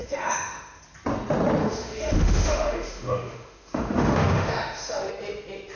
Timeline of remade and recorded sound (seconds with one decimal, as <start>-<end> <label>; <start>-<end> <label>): 0.0-0.8 remade; 0.8-1.6 recorded; 1.6-5.1 remade; 5.1-5.8 recorded